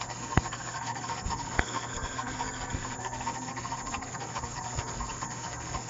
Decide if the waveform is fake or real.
fake